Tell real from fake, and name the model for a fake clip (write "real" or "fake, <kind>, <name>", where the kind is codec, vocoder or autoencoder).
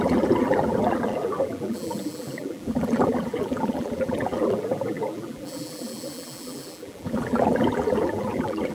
fake, vocoder, BigVGAN v2